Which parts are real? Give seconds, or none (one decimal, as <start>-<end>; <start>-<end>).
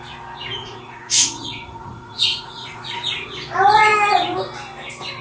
0.0-0.6; 3.0-5.2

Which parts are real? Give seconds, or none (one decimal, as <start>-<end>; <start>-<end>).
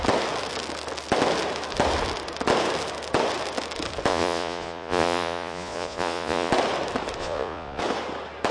0.0-4.1; 6.5-7.2; 7.8-8.5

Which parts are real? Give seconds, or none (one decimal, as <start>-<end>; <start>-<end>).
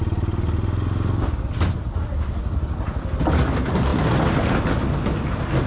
0.0-5.7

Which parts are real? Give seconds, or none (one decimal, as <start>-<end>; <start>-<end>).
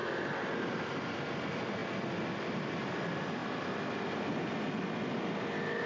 0.0-5.9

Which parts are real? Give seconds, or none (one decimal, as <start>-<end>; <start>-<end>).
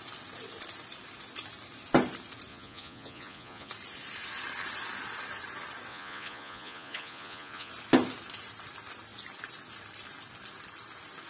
0.0-2.5; 3.7-5.9; 7.7-11.3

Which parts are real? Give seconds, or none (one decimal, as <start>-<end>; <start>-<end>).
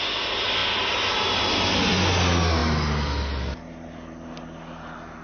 0.0-5.2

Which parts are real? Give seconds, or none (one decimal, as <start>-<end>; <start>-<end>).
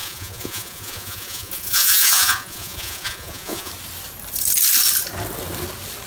3.7-6.1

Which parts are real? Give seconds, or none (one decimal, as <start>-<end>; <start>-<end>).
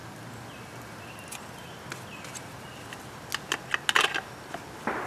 0.0-5.1